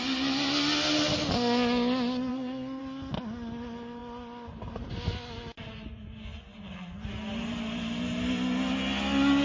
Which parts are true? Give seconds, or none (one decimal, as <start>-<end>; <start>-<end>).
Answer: 0.0-2.3; 2.8-9.4